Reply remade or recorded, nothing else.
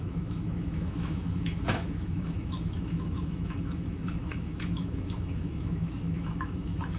remade